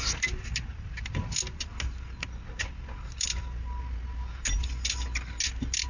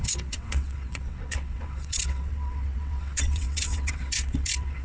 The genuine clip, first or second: first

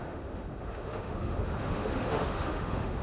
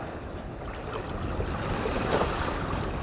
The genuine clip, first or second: second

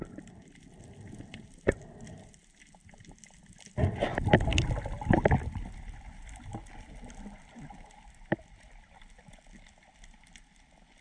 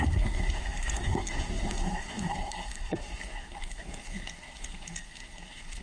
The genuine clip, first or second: first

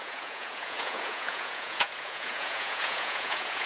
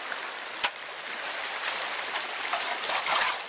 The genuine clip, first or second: second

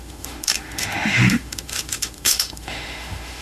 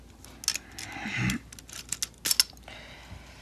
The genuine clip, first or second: second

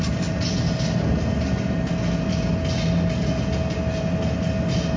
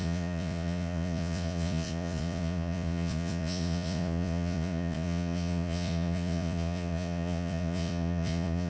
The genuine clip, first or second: first